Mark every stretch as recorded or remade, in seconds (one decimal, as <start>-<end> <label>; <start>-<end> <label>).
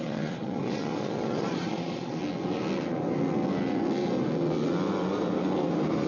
0.0-2.2 remade; 2.2-6.1 recorded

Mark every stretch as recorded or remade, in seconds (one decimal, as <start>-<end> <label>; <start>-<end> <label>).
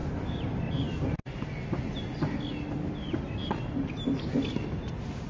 0.0-5.3 recorded